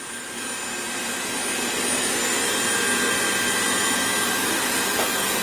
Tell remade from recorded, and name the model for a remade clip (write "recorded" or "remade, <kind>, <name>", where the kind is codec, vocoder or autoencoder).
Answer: recorded